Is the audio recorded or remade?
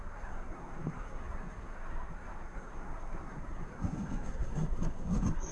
remade